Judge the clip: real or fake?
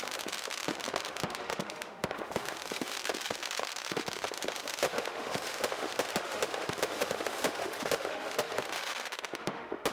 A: fake